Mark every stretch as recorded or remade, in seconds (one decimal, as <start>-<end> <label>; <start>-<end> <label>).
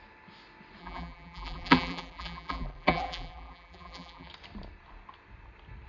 0.0-0.8 recorded; 0.8-4.3 remade; 4.3-5.9 recorded